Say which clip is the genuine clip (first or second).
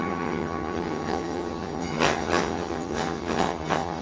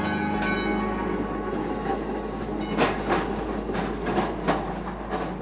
second